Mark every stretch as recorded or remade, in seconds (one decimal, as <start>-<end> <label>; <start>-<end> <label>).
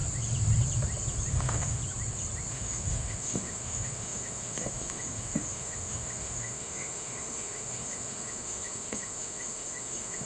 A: 0.0-1.3 recorded; 1.3-1.8 remade; 1.8-2.5 recorded; 2.5-10.3 remade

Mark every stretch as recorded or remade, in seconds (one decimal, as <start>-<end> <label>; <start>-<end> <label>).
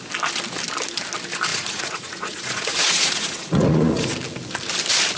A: 0.0-1.5 recorded; 1.5-4.1 remade; 4.1-5.2 recorded